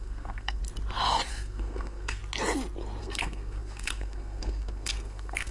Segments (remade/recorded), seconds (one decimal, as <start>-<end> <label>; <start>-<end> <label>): 0.0-0.6 remade; 0.6-1.3 recorded; 1.3-2.2 remade; 2.2-3.0 recorded; 3.0-5.5 remade